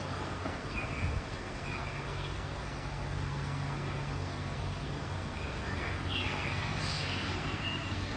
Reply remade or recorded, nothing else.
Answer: remade